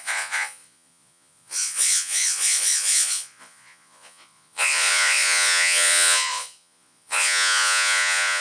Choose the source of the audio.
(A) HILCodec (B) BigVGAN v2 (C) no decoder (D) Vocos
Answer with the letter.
D